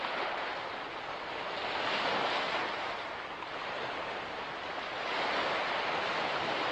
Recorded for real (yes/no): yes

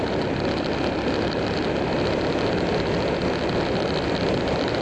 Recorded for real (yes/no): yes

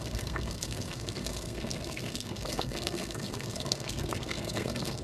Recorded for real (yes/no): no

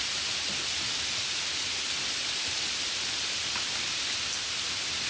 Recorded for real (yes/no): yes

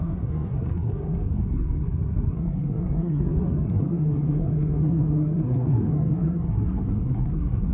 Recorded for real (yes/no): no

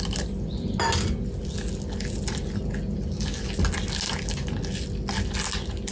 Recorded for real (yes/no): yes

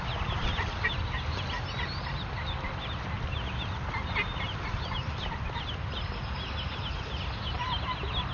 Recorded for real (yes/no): yes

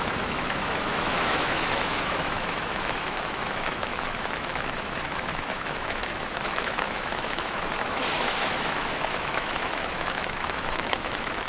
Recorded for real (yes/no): no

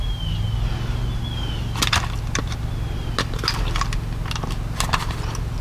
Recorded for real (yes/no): yes